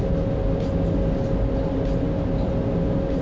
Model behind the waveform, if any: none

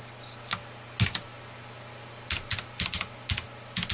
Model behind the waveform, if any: none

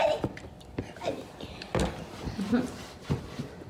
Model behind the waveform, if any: vocoder, BigVGAN v2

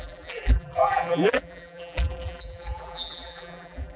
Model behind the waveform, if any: vocoder, BigVGAN v2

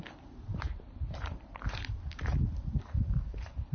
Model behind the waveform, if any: vocoder, BigVGAN v2